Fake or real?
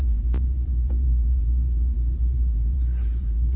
fake